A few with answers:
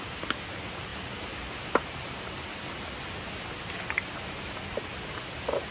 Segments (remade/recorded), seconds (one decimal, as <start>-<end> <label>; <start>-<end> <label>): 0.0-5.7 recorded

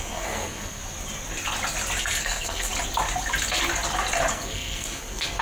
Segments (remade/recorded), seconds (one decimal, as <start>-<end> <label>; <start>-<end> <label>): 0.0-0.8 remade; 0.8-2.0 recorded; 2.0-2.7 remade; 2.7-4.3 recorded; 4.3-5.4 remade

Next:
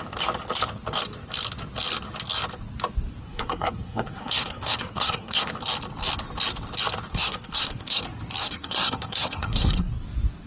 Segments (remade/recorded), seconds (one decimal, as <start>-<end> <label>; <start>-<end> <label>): 0.0-3.2 recorded; 3.2-5.5 remade; 5.5-7.1 recorded; 7.1-8.0 remade; 8.0-8.4 recorded; 8.4-9.9 remade; 9.9-10.5 recorded

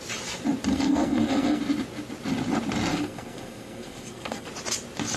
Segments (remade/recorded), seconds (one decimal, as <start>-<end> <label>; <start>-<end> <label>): 0.0-0.7 recorded; 0.7-1.6 remade; 1.6-2.9 recorded; 2.9-4.5 remade; 4.5-5.2 recorded

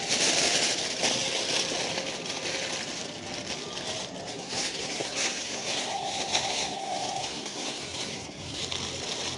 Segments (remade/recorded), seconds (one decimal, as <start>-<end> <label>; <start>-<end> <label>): 0.0-4.3 recorded; 4.3-8.6 remade; 8.6-9.4 recorded

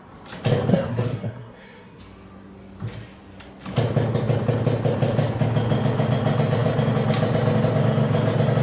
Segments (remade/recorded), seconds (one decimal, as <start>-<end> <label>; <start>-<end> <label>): 0.0-0.7 recorded; 0.7-2.0 remade; 2.0-8.6 recorded